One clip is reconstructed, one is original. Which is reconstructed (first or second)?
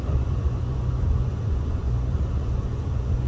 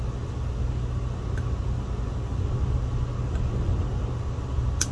first